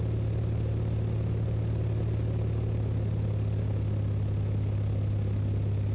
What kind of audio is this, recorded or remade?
recorded